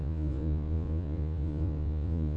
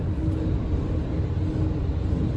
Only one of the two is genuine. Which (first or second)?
second